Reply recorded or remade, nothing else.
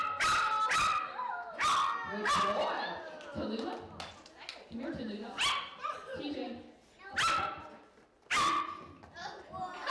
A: recorded